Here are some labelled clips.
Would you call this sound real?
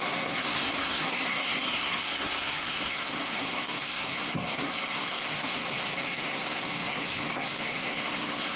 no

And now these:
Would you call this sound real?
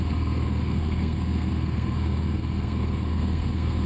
no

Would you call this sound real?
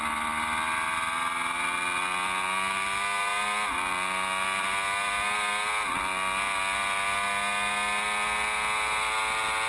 yes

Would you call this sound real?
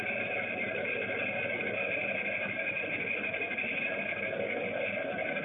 yes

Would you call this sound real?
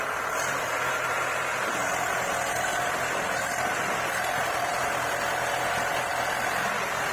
yes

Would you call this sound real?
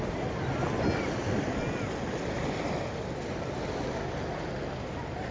yes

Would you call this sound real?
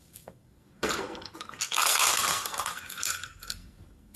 no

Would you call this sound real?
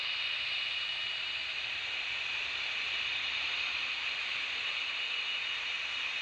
yes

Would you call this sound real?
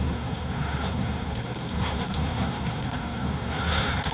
no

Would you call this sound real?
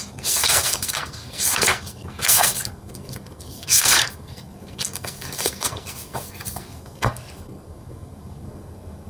no